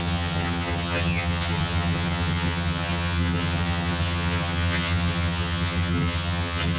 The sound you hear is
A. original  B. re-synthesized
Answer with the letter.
B